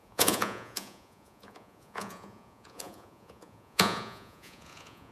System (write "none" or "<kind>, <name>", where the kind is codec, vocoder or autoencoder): vocoder, Vocos